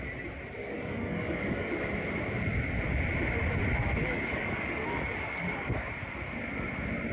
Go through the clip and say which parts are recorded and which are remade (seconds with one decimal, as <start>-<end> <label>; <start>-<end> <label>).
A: 0.0-0.6 recorded; 0.6-1.7 remade; 1.7-4.0 recorded; 4.0-5.9 remade; 5.9-7.1 recorded